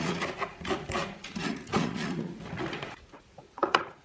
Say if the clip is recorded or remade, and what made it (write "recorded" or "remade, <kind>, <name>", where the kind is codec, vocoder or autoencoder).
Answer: remade, vocoder, Vocos